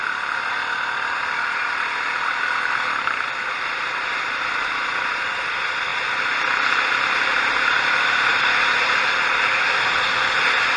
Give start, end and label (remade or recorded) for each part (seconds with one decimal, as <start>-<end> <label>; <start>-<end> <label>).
0.0-10.8 recorded